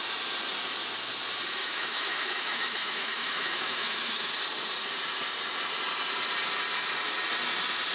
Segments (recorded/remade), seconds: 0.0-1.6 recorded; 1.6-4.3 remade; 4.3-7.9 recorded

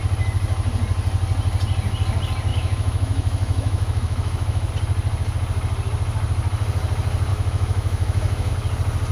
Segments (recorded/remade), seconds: 0.0-2.5 recorded; 2.5-4.7 remade; 4.7-7.3 recorded; 7.3-8.5 remade; 8.5-9.1 recorded

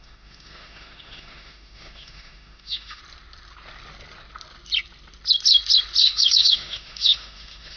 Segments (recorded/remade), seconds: 0.0-3.0 remade; 3.0-6.0 recorded; 6.0-7.8 remade

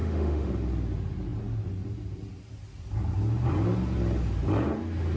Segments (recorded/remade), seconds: 0.0-0.5 remade; 0.5-5.2 recorded

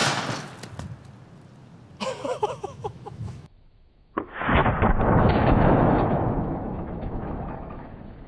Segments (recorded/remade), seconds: 0.0-2.0 recorded; 2.0-4.6 remade; 4.6-5.3 recorded; 5.3-8.3 remade